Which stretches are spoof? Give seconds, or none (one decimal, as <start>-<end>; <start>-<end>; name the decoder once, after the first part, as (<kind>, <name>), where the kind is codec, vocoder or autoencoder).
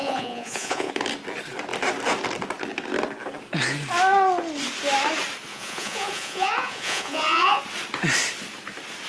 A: 0.0-0.9 (vocoder, Vocos); 5.5-7.6